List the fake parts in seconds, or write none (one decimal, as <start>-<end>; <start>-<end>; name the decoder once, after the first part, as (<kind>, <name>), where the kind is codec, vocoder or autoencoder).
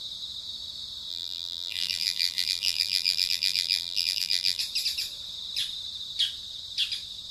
1.1-4.6 (vocoder, BigVGAN v2)